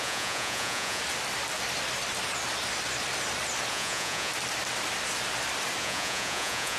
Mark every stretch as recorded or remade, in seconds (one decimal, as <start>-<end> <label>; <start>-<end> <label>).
0.0-1.0 remade; 1.0-3.7 recorded; 3.7-4.3 remade; 4.3-5.8 recorded; 5.8-6.8 remade